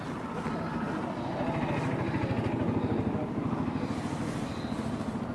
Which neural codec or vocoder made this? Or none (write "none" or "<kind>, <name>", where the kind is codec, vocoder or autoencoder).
none